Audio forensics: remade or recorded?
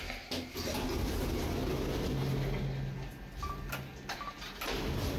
recorded